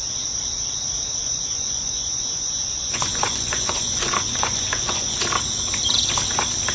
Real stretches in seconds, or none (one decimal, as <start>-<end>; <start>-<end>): 0.0-1.2; 5.2-6.7